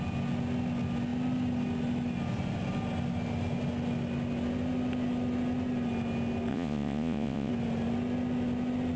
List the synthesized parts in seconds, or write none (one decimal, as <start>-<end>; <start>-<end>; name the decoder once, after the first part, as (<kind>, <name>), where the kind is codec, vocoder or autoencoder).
6.5-7.5 (vocoder, Vocos)